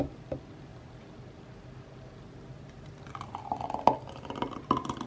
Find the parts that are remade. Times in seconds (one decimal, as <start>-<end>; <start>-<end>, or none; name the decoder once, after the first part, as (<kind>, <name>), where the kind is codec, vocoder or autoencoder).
none